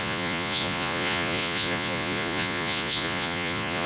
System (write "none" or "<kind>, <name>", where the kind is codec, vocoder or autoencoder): vocoder, Vocos